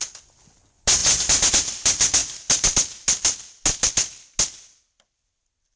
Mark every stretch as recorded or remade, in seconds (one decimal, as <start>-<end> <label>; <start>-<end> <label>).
0.0-5.8 recorded